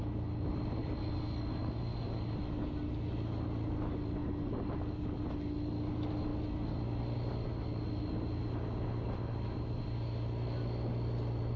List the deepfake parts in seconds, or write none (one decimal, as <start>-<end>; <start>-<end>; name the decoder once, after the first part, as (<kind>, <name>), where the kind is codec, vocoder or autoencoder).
none